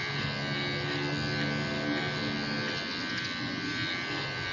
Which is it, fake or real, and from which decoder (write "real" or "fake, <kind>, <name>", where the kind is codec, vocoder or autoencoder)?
real